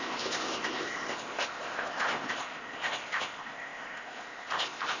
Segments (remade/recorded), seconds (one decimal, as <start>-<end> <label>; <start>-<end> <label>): 0.0-5.0 remade